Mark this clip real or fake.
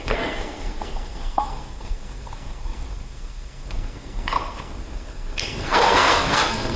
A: fake